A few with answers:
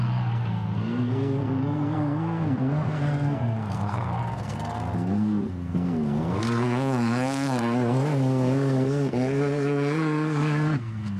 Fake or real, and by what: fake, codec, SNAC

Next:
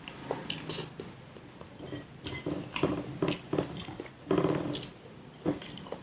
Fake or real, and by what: real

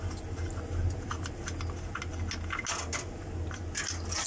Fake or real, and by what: real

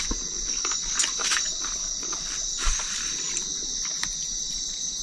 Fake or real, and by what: real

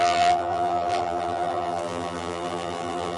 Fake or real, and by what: fake, vocoder, BigVGAN v2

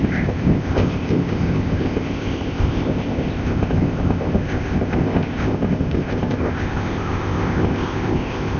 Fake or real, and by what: fake, codec, ZipCodec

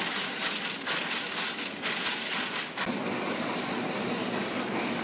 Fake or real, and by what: real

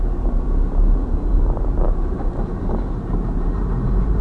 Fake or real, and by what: real